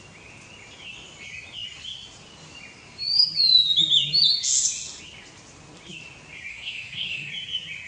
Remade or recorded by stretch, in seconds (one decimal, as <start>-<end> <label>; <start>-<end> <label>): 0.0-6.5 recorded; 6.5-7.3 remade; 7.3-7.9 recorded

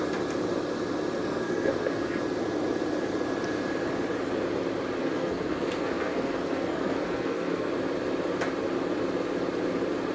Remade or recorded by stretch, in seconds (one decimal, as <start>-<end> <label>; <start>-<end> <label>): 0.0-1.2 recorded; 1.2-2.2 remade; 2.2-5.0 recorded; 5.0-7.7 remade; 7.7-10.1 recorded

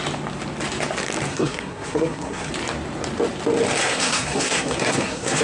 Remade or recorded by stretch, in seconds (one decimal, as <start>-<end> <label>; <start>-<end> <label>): 0.0-1.3 recorded; 1.3-2.5 remade; 2.5-3.8 recorded; 3.8-5.4 remade

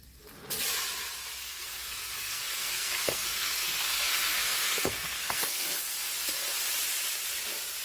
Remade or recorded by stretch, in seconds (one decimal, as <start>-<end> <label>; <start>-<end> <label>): 0.0-1.4 recorded; 1.4-6.1 remade; 6.1-7.8 recorded

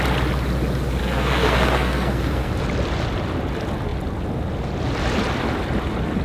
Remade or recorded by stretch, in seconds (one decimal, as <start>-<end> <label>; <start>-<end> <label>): 0.0-1.0 recorded; 1.0-2.5 remade; 2.5-6.2 recorded

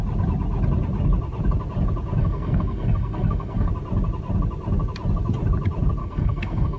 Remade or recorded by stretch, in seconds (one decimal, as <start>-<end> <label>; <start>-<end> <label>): 0.0-2.2 recorded; 2.2-3.7 remade; 3.7-6.0 recorded; 6.0-6.8 remade